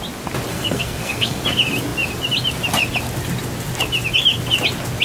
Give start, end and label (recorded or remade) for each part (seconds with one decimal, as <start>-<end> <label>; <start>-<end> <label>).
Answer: 0.0-0.5 recorded; 0.5-1.4 remade; 1.4-5.0 recorded